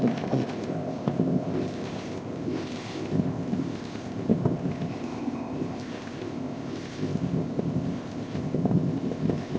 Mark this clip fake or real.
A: fake